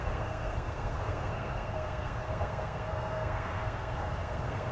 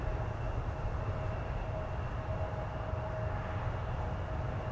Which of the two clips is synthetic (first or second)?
first